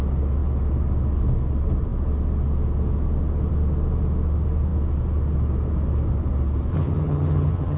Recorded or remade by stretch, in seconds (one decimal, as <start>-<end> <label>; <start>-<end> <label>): 0.0-6.7 recorded; 6.7-7.8 remade